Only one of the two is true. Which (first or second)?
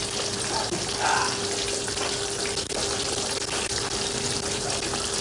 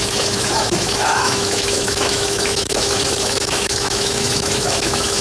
first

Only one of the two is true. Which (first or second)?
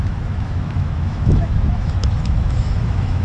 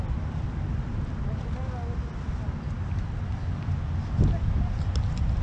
second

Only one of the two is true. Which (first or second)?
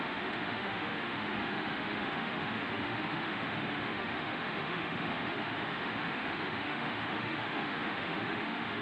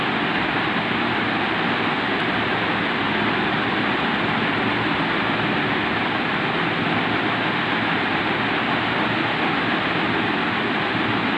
second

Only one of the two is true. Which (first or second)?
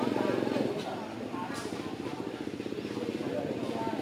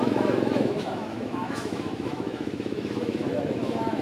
first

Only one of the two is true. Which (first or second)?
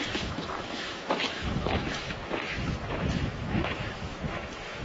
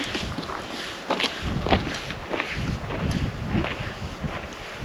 second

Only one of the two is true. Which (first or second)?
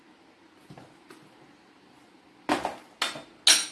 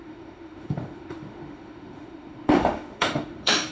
first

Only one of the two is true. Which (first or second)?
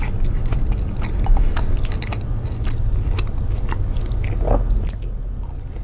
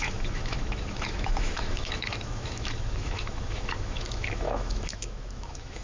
first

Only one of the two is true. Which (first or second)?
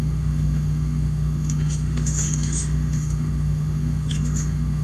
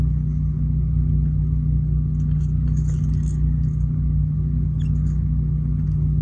second